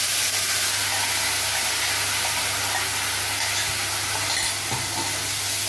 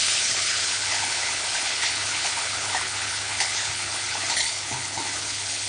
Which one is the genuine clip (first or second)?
first